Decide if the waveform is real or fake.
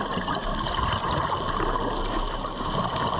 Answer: real